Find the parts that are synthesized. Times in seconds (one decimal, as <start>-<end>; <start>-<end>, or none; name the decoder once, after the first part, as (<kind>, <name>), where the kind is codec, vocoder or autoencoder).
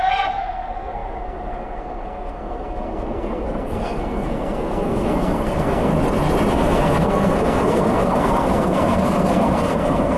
0.0-5.9 (codec, SNAC); 6.5-10.2